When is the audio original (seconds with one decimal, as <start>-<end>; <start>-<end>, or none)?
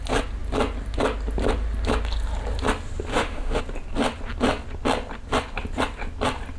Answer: 0.0-3.1; 3.6-6.6